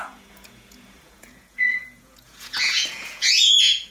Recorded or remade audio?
remade